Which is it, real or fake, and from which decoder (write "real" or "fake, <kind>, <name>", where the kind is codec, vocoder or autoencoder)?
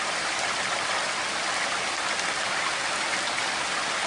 real